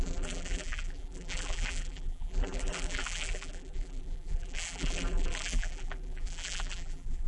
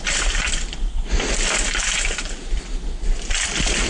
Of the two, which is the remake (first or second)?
first